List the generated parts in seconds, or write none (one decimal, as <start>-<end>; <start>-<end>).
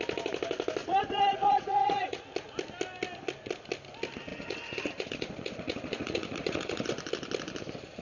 0.8-2.2; 4.3-6.9